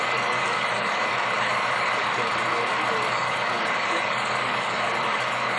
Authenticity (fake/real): fake